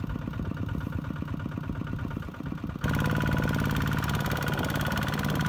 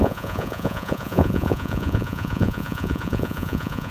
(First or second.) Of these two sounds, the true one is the first